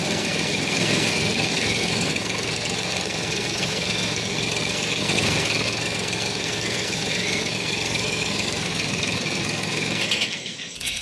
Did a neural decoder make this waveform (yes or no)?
yes